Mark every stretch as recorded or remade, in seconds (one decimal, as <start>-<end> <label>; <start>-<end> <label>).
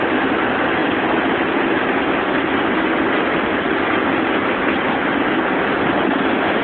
0.0-6.6 recorded